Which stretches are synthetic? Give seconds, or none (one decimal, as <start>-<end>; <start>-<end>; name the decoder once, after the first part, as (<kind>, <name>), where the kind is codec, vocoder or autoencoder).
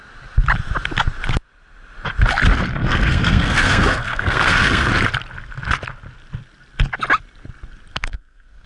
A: 2.7-4.9 (codec, SNAC); 7.9-8.7